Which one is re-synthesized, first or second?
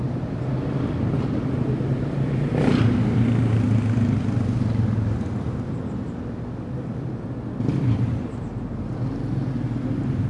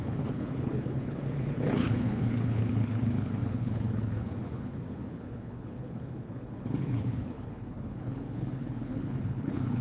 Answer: second